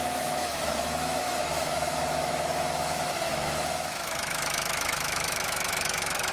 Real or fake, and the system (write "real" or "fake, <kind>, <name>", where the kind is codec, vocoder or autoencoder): fake, autoencoder, DAC-VAE